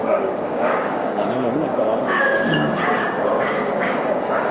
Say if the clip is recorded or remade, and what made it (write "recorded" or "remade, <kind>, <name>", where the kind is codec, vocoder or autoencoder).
remade, codec, DAC